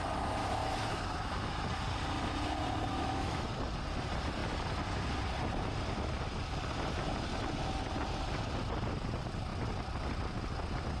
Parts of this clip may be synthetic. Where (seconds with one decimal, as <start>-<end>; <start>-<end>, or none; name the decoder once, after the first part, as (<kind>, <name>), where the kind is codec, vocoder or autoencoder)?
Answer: 0.4-1.7 (autoencoder, DAC-VAE); 2.9-3.5

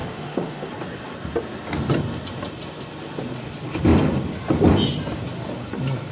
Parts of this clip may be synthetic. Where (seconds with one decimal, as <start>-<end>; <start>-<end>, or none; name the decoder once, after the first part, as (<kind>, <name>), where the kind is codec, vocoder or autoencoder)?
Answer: 0.0-0.7 (autoencoder, DAC-VAE)

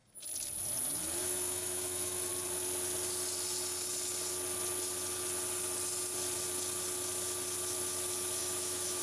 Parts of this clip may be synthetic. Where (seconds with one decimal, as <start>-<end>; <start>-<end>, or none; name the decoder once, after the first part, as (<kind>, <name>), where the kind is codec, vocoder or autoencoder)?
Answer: 1.2-2.3 (autoencoder, DAC-VAE); 8.4-9.0

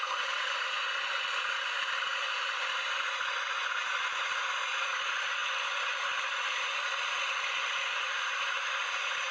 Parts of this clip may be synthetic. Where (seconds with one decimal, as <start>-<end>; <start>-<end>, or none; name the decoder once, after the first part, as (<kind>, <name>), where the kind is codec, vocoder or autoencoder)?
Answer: none